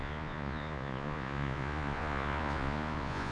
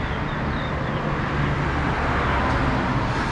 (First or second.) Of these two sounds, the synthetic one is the first